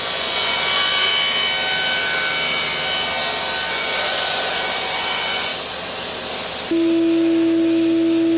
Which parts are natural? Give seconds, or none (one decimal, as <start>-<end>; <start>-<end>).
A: 1.1-3.7; 5.5-8.4